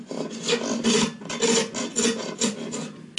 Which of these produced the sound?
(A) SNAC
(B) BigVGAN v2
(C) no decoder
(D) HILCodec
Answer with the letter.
C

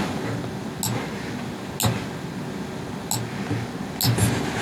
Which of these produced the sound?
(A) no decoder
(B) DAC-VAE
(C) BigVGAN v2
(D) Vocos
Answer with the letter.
A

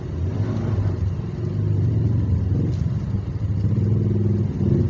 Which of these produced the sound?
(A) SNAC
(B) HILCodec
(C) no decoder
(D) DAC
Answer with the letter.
C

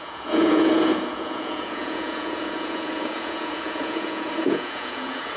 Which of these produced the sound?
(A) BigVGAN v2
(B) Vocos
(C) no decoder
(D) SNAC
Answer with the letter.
B